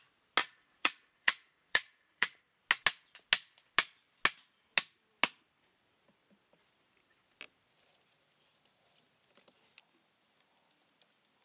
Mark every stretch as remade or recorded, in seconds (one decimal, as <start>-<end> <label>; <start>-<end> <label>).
0.0-0.4 recorded; 0.4-2.4 remade; 2.4-11.4 recorded